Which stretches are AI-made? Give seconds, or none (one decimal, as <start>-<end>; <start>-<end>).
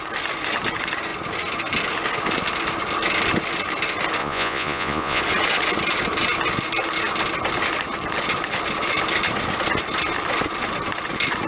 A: 4.2-5.2